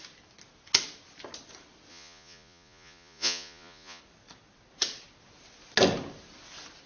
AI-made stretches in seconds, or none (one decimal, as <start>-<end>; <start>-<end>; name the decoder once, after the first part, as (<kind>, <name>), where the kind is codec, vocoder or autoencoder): 1.9-4.0 (vocoder, Vocos)